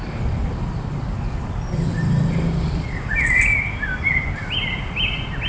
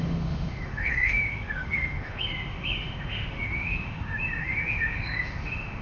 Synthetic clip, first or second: second